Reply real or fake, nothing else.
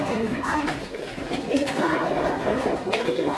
fake